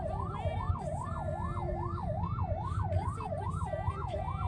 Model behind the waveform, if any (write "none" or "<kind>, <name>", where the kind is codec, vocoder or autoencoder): vocoder, BigVGAN v2